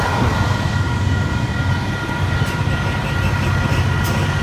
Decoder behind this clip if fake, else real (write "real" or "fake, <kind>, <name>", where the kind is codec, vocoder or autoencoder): real